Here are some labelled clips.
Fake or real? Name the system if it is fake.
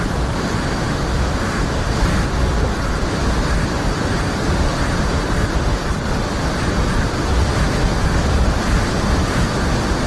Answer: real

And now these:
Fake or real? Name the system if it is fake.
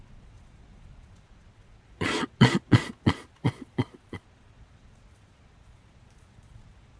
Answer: fake, vocoder, Vocos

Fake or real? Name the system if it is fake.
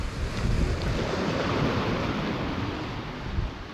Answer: real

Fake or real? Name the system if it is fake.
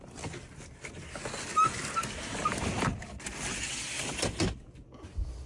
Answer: real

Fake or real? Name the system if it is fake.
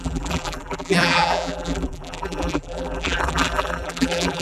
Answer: fake, vocoder, BigVGAN v2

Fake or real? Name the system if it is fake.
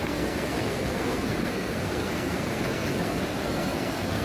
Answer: fake, codec, SNAC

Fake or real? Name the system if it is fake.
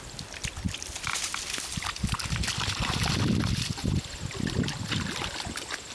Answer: real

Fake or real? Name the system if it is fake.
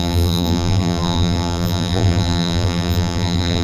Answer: fake, vocoder, BigVGAN v2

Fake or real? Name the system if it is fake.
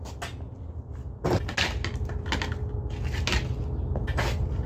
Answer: real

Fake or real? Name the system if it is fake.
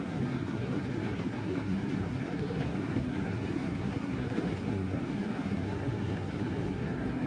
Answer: fake, codec, SNAC